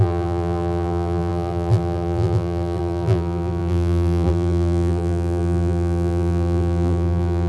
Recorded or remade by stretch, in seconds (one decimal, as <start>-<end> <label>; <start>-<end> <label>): 0.0-7.5 remade